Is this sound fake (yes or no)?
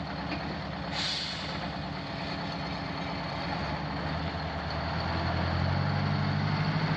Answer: no